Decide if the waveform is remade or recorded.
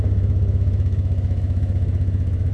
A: remade